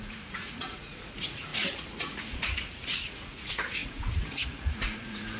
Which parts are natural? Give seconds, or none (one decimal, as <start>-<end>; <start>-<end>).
none